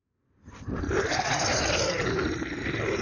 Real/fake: real